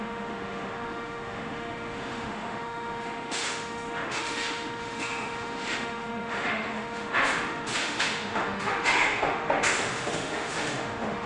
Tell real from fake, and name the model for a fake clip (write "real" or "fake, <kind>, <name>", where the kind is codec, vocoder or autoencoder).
fake, autoencoder, DAC-VAE